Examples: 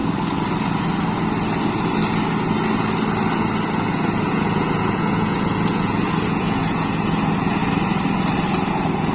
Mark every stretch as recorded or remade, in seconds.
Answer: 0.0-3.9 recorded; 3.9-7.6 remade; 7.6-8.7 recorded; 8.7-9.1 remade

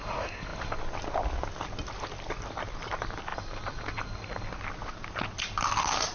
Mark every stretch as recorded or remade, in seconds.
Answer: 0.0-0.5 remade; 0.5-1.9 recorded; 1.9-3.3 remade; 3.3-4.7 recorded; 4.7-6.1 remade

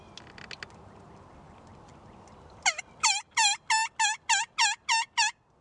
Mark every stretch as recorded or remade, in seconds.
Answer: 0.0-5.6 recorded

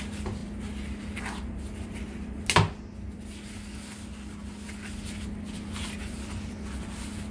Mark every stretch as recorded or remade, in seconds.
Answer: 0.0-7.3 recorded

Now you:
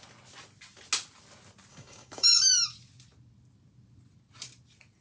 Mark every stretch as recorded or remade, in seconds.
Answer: 0.0-1.7 recorded; 1.7-2.4 remade; 2.4-5.0 recorded

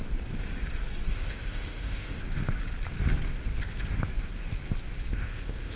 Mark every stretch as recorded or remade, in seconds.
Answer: 0.0-1.1 recorded; 1.1-2.2 remade; 2.2-5.1 recorded; 5.1-5.8 remade

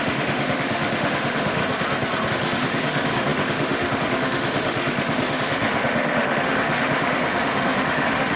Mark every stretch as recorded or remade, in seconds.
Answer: 0.0-1.6 remade; 1.6-2.3 recorded; 2.3-8.4 remade